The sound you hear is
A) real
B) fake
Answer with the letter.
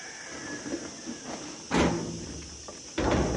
A